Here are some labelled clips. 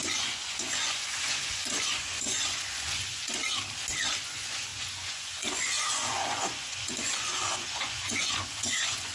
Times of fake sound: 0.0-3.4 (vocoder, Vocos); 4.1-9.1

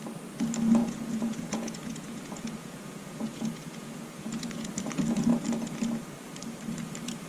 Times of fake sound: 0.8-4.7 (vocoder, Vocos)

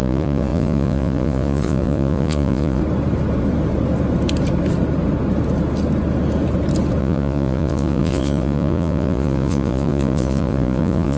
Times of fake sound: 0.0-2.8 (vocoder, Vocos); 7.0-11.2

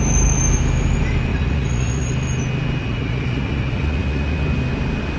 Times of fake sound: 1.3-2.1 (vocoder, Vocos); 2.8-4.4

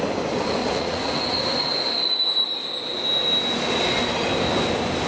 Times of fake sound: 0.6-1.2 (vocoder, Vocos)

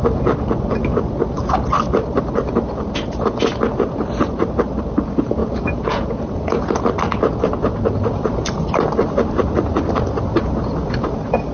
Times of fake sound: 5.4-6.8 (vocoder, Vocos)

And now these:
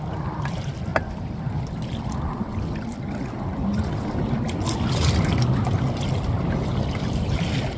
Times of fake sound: none